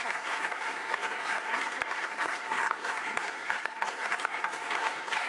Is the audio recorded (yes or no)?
no